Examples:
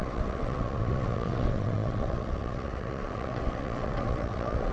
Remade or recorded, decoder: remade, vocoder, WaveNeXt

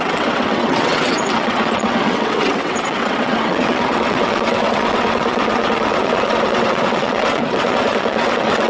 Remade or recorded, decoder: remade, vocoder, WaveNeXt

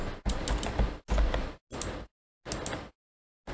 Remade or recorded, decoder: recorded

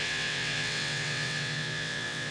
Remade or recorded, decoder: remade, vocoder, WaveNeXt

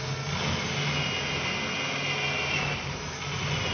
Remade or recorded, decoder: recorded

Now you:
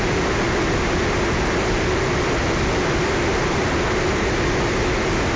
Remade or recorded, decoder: recorded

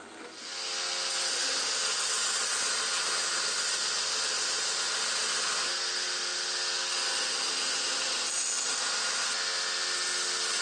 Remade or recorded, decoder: recorded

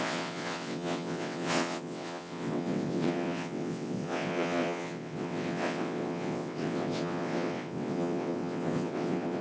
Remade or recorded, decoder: remade, vocoder, WaveNeXt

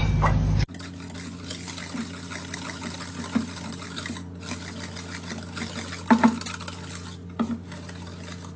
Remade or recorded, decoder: recorded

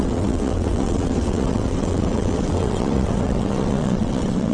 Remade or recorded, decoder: remade, vocoder, WaveNeXt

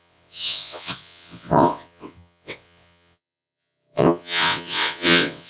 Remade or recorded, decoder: remade, vocoder, WaveNeXt